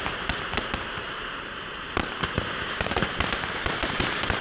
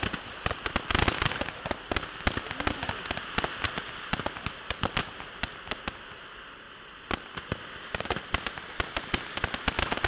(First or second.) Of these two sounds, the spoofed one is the first